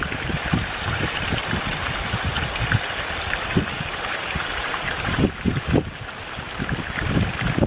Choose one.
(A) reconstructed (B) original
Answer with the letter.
A